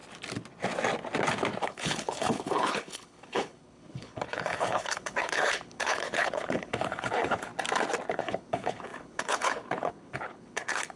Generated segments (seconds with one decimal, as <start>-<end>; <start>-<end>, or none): 1.6-7.5; 8.1-11.0